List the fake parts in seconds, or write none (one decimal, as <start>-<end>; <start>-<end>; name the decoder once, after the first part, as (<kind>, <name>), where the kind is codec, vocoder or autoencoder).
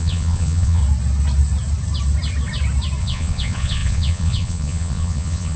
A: 0.0-0.8 (vocoder, Vocos); 3.0-5.6